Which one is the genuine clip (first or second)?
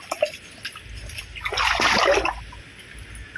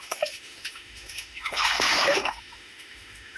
first